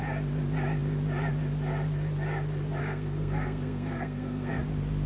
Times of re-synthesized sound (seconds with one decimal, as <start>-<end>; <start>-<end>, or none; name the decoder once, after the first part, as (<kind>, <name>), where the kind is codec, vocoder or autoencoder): 2.8-4.5 (codec, SNAC)